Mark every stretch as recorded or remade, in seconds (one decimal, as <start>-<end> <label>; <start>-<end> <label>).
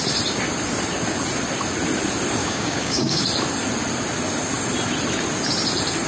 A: 0.0-2.4 recorded; 2.4-3.2 remade; 3.2-6.1 recorded